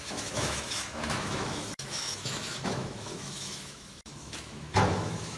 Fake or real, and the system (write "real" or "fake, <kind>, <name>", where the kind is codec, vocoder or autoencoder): fake, autoencoder, DAC-VAE